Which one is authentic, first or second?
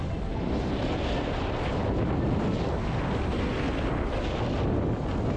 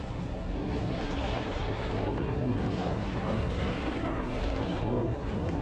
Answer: first